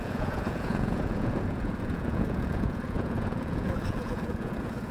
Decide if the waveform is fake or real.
fake